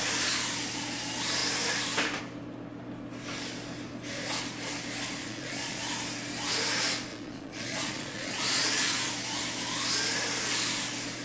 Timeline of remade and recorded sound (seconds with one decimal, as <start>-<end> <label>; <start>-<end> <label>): 0.0-5.2 recorded; 5.2-5.8 remade; 5.8-7.1 recorded; 7.1-9.1 remade; 9.1-11.2 recorded